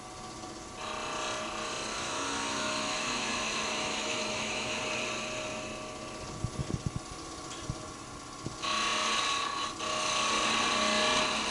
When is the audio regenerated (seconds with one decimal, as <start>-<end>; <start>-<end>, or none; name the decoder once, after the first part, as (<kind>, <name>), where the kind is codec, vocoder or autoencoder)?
1.9-4.8 (autoencoder, DAC-VAE)